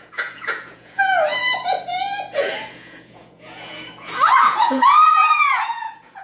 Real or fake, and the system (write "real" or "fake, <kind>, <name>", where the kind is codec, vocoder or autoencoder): fake, vocoder, Vocos